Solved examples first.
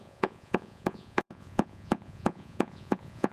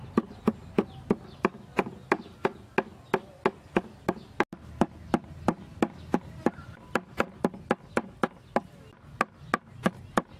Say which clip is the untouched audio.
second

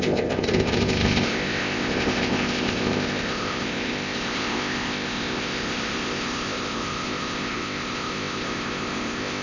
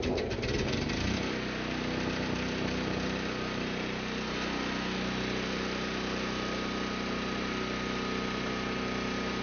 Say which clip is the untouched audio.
second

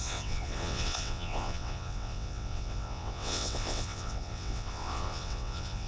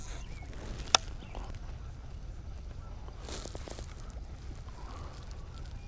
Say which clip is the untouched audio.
second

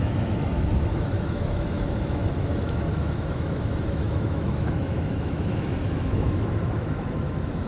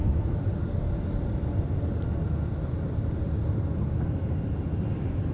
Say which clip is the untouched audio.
second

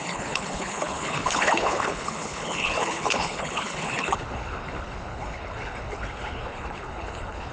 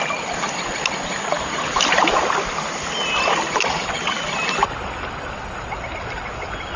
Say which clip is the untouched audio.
second